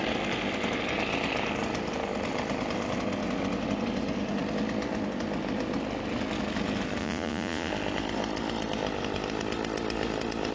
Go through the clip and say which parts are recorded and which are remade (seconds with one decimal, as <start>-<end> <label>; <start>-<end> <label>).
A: 0.0-7.0 recorded; 7.0-7.7 remade; 7.7-10.5 recorded